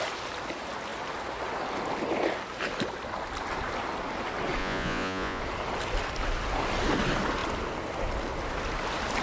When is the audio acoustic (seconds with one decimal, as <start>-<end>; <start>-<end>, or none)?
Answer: 0.0-4.6; 5.4-9.2